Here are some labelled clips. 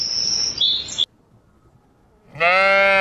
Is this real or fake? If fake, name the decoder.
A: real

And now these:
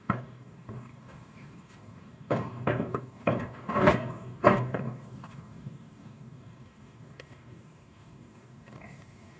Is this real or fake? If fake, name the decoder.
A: fake, codec, DAC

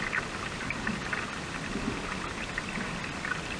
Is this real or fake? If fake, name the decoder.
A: real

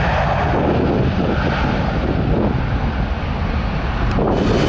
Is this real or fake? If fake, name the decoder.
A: real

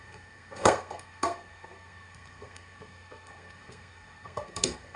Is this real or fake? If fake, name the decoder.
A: fake, codec, SNAC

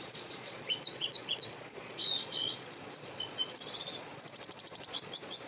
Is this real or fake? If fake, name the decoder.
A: fake, vocoder, Vocos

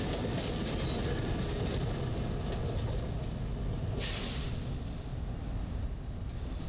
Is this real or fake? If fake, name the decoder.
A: real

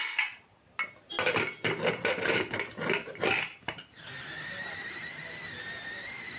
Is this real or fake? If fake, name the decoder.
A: real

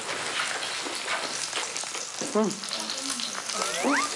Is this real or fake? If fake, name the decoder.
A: real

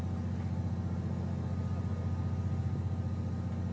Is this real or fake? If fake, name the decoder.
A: real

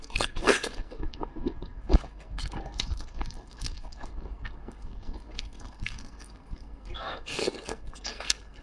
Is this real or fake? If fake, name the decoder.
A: fake, codec, SNAC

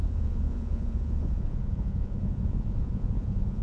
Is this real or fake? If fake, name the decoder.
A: fake, vocoder, Vocos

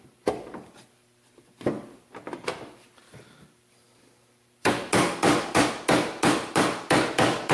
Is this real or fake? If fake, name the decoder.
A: fake, vocoder, BigVGAN v2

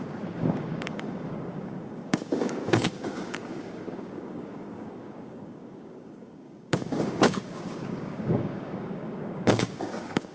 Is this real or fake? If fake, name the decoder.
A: fake, codec, DAC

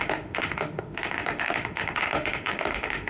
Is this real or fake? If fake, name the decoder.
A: fake, autoencoder, DAC-VAE